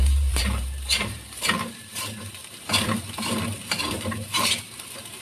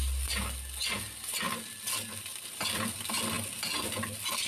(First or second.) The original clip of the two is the second